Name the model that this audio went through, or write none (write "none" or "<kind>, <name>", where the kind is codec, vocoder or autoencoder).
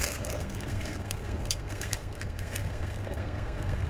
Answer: codec, SNAC